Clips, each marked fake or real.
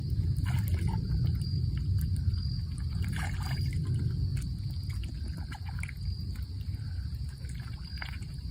real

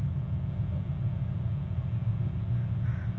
real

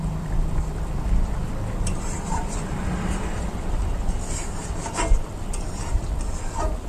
fake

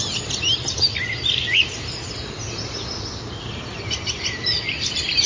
fake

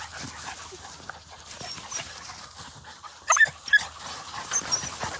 real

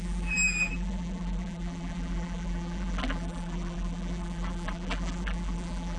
fake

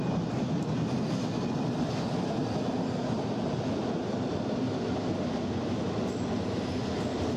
real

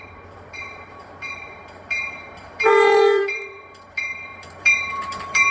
fake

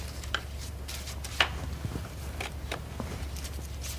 fake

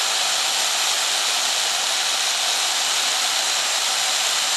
real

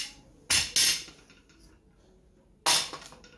real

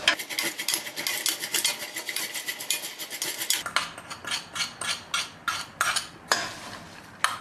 real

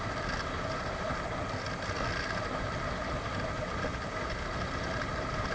real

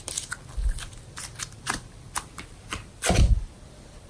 fake